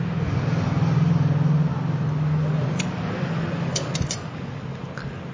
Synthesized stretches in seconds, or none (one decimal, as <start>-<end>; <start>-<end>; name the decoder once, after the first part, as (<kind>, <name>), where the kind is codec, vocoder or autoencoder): none